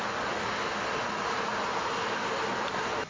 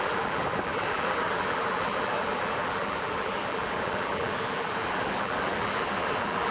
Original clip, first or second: first